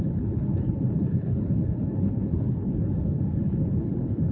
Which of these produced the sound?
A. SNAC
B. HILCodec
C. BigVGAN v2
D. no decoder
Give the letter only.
B